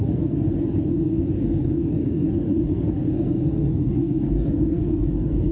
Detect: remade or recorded remade